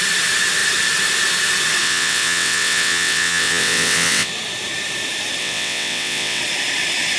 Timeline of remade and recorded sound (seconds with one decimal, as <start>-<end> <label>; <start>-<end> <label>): 0.0-1.8 recorded; 1.8-4.3 remade; 4.3-5.4 recorded; 5.4-6.4 remade; 6.4-7.2 recorded